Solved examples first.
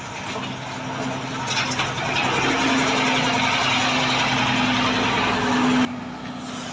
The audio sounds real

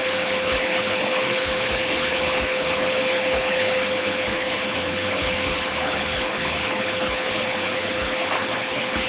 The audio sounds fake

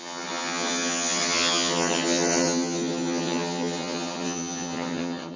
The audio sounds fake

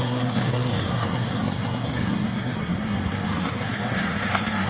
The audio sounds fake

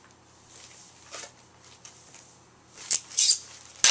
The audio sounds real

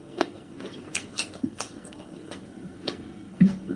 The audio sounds fake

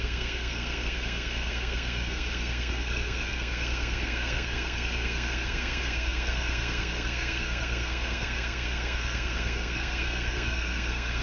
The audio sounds fake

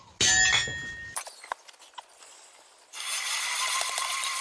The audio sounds real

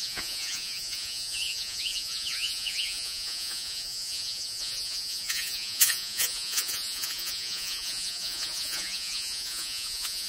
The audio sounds fake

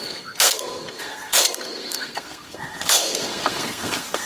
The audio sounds fake